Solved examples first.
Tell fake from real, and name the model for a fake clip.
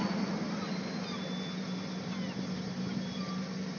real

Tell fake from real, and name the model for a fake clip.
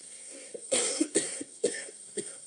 fake, codec, SNAC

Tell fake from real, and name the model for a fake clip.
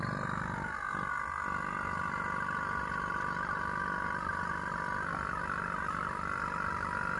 real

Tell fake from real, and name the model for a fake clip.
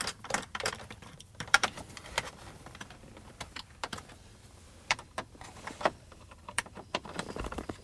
fake, vocoder, BigVGAN v2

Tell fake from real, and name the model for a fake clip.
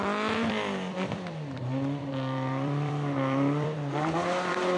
fake, vocoder, BigVGAN v2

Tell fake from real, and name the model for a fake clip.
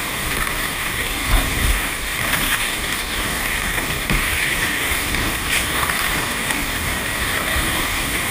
fake, codec, DAC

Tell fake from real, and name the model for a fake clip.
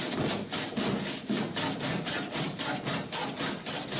real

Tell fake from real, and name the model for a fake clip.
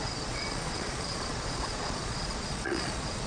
fake, vocoder, Vocos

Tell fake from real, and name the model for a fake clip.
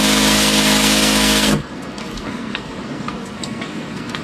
fake, codec, SNAC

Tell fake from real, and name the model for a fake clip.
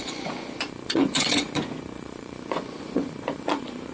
fake, vocoder, Vocos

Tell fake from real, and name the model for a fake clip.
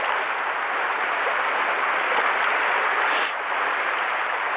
real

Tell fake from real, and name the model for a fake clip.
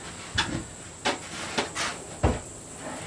real